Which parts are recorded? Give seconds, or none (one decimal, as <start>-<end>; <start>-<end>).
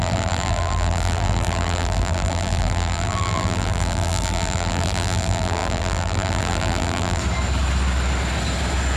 7.2-9.0